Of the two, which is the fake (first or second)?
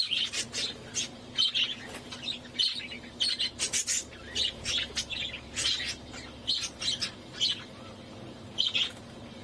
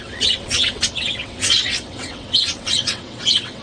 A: second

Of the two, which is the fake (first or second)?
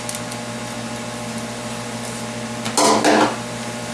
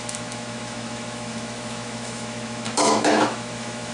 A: second